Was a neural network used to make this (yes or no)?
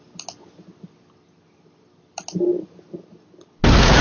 no